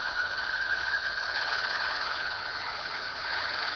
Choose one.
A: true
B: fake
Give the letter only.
B